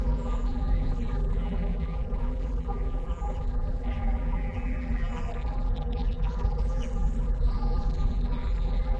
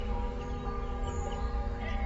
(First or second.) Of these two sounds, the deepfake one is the first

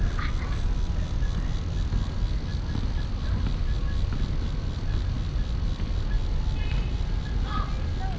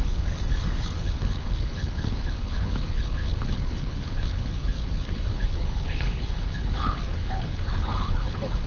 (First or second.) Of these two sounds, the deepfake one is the second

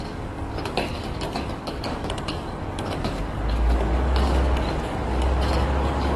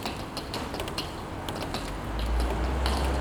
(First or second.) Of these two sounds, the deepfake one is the first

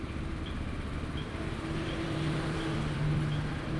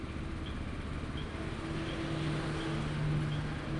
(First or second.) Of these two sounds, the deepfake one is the first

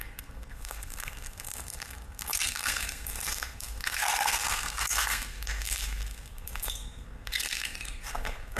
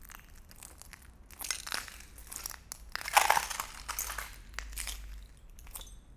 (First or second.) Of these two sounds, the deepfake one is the first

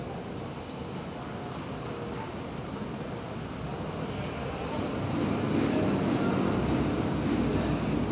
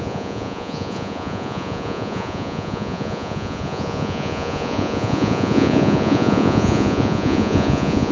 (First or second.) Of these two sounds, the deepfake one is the second